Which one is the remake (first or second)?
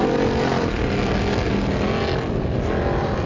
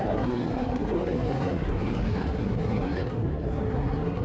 second